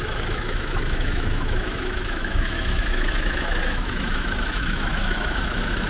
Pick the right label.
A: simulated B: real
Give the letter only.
A